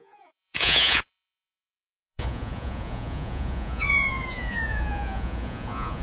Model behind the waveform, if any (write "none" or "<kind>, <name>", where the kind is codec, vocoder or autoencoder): vocoder, Vocos